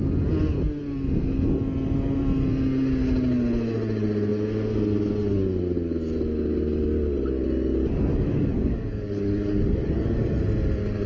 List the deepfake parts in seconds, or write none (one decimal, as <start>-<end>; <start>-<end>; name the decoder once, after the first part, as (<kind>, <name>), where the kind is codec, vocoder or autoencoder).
8.1-10.4 (codec, DAC)

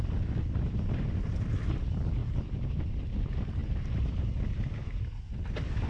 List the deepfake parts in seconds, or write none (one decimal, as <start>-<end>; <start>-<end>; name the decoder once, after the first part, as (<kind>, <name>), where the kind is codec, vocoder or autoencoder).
none

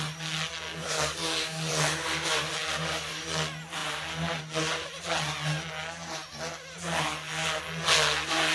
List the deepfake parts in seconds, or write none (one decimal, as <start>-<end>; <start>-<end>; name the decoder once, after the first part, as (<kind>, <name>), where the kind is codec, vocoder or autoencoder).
0.7-1.7 (codec, DAC)

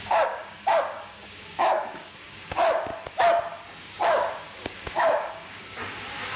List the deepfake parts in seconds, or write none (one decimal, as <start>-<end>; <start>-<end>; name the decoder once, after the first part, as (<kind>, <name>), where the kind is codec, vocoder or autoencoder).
0.0-2.9 (codec, DAC); 3.8-5.8

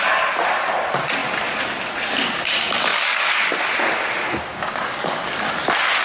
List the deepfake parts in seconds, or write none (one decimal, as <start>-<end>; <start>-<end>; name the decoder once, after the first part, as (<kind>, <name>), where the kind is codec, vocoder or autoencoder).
2.9-3.6 (codec, DAC); 4.5-5.3